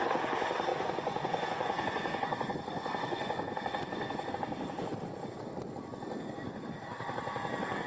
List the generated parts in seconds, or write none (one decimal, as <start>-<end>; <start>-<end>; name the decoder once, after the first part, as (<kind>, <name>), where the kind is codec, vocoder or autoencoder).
0.7-4.3 (vocoder, Vocos)